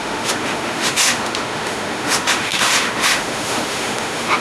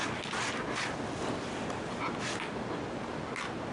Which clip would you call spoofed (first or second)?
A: first